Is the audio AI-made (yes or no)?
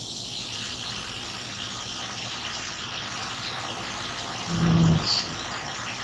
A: no